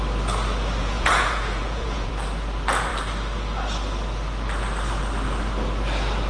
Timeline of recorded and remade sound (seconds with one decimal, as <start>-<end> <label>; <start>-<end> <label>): 0.0-0.8 recorded; 0.8-2.1 remade; 2.1-6.3 recorded